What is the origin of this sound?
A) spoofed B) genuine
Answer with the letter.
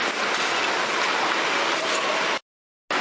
B